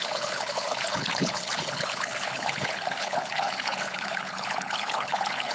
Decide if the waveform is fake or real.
fake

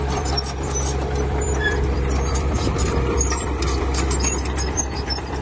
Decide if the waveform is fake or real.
fake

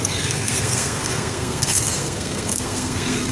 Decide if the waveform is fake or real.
fake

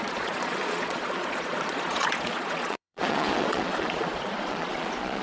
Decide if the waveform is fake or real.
fake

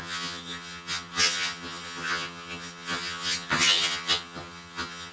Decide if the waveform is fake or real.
fake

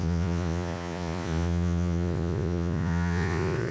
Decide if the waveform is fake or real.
fake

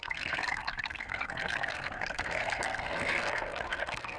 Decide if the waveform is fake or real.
fake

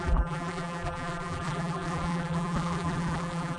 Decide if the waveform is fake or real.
fake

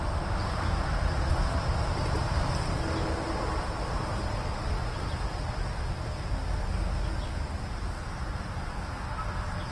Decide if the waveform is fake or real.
real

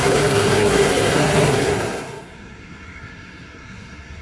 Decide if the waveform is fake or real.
fake